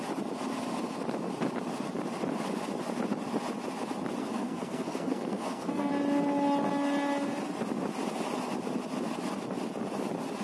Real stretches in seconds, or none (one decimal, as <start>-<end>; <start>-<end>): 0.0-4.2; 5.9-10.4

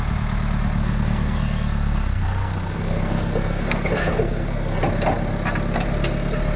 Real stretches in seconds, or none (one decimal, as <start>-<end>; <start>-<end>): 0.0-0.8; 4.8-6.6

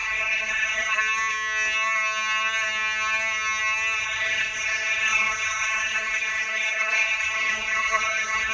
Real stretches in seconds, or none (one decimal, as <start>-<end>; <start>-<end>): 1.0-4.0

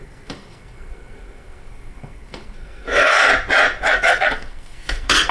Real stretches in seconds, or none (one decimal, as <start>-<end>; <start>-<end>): 3.3-3.8

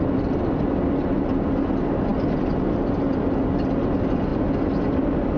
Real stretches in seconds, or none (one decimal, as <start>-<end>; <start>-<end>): 0.0-5.4

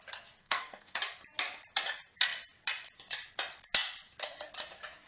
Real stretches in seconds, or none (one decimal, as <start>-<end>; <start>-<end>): 0.0-0.4; 1.0-5.1